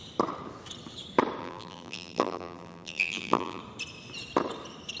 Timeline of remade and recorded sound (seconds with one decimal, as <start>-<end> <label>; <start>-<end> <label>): 0.0-1.4 recorded; 1.4-3.6 remade; 3.6-5.0 recorded